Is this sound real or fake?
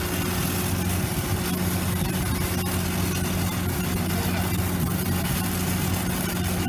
real